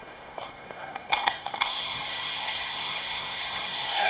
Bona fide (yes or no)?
no